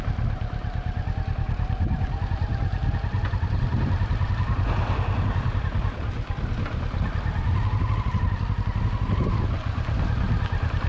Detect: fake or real real